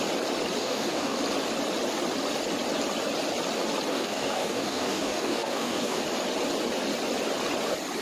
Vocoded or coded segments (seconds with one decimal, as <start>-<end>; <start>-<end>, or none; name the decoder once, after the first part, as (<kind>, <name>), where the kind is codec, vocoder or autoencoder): 0.6-1.2 (codec, DAC); 3.9-6.0